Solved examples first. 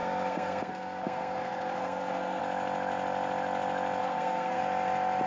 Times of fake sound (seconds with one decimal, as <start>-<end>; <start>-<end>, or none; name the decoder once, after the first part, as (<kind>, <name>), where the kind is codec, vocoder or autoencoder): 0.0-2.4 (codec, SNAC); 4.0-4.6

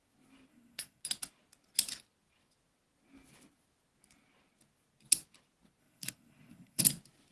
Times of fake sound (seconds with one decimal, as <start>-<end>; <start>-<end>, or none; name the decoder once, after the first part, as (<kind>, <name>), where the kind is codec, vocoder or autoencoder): 0.5-1.0 (codec, SNAC); 5.8-6.8

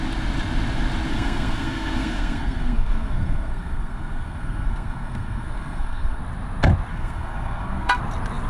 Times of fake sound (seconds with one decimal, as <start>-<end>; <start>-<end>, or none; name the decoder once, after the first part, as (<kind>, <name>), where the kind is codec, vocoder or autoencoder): 1.1-6.2 (codec, SNAC); 6.9-8.0

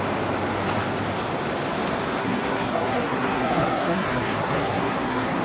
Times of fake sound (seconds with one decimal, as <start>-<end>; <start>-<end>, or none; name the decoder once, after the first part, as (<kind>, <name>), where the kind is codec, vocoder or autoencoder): 2.2-5.4 (codec, SNAC)